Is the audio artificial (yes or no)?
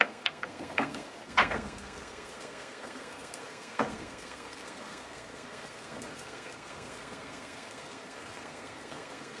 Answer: yes